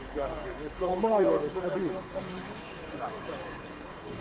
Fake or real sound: fake